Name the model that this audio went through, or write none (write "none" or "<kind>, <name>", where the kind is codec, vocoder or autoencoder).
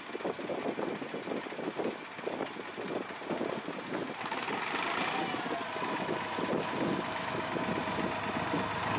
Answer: none